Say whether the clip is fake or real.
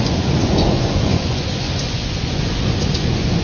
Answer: fake